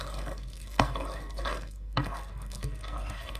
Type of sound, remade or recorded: remade